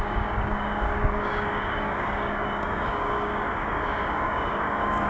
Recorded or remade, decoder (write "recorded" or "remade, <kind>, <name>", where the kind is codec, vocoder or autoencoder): remade, codec, DAC